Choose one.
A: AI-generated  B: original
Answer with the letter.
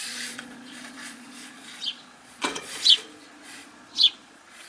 A